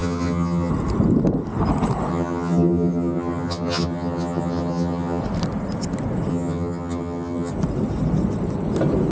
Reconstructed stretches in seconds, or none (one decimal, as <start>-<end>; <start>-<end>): 0.0-0.7; 2.1-5.2; 6.3-7.5